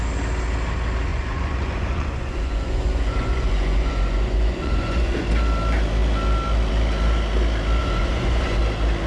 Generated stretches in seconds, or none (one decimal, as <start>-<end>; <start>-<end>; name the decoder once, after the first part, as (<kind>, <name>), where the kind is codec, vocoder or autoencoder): 1.1-5.3 (vocoder, Vocos); 7.8-8.6